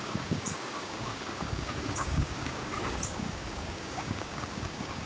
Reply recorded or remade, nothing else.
remade